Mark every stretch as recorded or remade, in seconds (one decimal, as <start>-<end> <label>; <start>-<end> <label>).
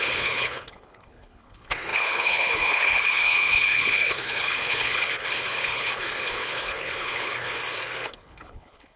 0.0-7.6 remade; 7.6-8.1 recorded; 8.1-9.0 remade